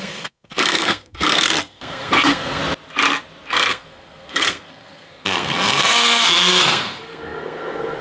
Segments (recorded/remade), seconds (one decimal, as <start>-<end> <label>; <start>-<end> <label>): 0.0-2.6 remade; 2.6-3.5 recorded; 3.5-8.0 remade